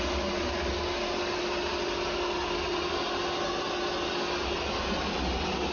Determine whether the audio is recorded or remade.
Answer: recorded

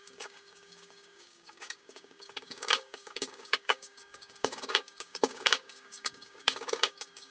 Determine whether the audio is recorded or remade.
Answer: remade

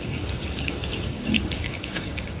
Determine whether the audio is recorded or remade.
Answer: remade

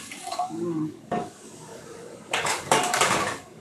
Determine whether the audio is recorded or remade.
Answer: remade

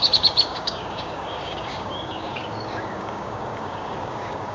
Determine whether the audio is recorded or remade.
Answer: remade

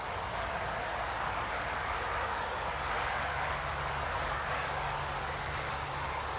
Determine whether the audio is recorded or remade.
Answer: remade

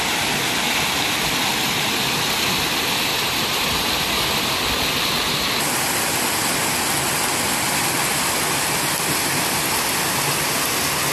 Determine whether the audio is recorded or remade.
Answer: recorded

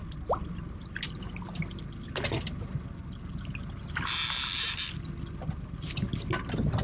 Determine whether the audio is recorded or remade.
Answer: recorded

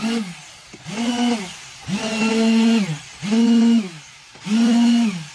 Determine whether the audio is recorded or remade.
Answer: recorded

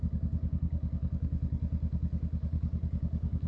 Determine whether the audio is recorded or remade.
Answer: remade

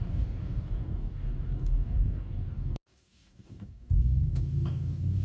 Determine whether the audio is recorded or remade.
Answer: remade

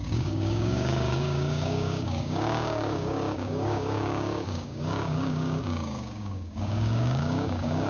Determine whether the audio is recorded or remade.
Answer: remade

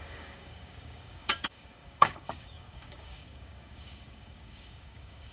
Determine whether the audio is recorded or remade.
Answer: remade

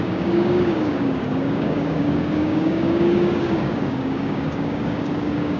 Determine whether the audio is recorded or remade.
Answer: remade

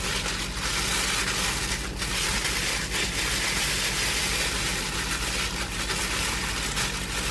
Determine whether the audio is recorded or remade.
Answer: recorded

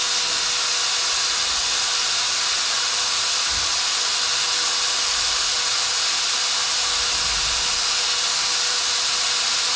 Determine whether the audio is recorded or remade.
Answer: recorded